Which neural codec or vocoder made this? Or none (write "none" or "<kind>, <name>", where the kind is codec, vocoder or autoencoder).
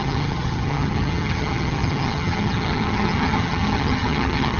vocoder, HiFi-GAN